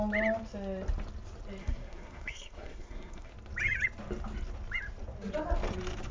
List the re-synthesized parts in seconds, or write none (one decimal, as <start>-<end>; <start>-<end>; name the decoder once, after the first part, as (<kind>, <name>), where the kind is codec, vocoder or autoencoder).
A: 1.6-3.3 (codec, SNAC)